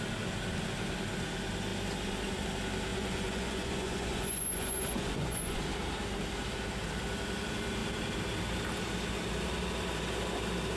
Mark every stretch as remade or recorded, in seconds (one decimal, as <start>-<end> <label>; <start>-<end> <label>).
0.0-2.9 recorded; 2.9-5.6 remade; 5.6-10.8 recorded